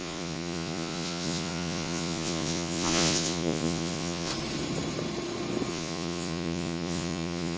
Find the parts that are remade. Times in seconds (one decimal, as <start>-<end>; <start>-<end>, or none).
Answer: 0.0-4.3; 5.7-7.6